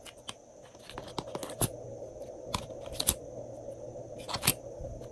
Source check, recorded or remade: recorded